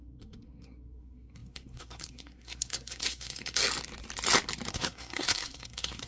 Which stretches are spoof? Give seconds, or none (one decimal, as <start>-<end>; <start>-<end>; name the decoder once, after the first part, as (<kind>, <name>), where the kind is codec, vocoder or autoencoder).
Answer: 0.0-3.6 (codec, SNAC); 4.7-6.1

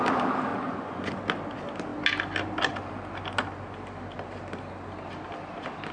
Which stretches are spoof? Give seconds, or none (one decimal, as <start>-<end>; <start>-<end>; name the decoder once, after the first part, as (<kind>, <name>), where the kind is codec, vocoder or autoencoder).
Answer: 0.5-1.1 (vocoder, Vocos)

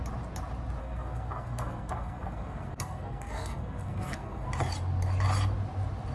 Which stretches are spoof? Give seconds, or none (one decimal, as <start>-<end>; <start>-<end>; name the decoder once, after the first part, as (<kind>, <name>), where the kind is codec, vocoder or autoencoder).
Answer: 0.8-4.5 (codec, SNAC)

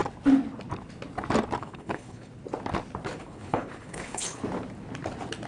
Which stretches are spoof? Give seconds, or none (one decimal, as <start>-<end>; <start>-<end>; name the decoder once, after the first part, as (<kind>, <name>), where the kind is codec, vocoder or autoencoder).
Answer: 1.6-2.3 (codec, HILCodec); 3.2-4.4

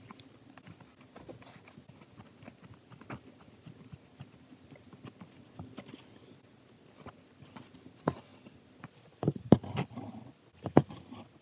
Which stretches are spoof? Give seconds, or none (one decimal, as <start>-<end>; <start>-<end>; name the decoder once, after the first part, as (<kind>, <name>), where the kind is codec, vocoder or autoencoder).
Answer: none

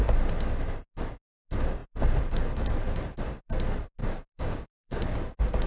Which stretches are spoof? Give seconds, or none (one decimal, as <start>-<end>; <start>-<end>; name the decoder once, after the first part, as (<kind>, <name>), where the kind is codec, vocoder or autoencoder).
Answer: 4.0-5.0 (codec, DAC)

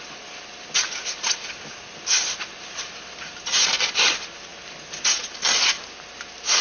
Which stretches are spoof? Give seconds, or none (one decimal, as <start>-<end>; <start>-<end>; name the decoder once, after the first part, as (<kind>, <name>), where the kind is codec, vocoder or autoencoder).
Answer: none

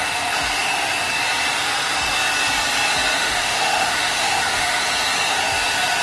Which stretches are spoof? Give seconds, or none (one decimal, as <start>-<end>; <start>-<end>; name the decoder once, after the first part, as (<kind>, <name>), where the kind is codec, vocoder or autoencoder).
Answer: 3.2-4.8 (autoencoder, DAC-VAE)